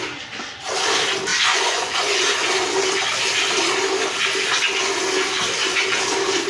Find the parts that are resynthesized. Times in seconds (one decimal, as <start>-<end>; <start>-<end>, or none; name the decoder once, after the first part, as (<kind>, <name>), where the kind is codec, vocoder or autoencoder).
1.3-2.5 (vocoder, Vocos)